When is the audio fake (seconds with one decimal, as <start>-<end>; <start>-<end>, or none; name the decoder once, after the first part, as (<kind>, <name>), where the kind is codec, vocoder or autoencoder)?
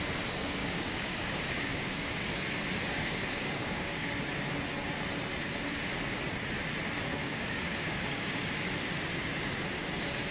0.6-2.1 (codec, DAC); 2.9-4.1; 7.2-8.5